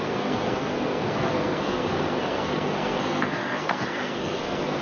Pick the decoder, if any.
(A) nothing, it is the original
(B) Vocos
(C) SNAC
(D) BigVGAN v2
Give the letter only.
C